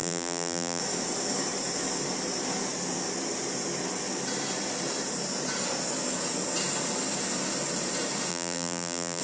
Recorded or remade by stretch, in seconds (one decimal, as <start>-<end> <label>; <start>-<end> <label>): 0.0-0.8 remade; 0.8-8.3 recorded; 8.3-9.2 remade